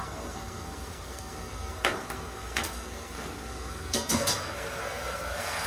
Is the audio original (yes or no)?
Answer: no